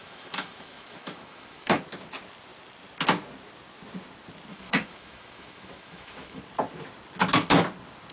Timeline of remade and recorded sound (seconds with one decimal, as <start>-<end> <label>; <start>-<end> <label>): 0.0-1.8 remade; 1.8-4.5 recorded; 4.5-6.4 remade; 6.4-8.1 recorded